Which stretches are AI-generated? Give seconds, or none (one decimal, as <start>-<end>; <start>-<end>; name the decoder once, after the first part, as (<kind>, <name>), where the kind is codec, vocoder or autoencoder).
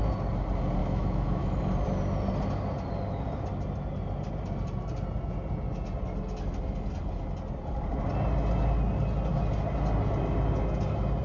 0.8-1.6 (autoencoder, DAC-VAE)